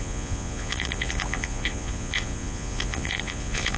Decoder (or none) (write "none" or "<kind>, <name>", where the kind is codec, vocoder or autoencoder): vocoder, Vocos